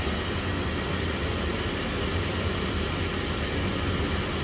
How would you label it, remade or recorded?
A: recorded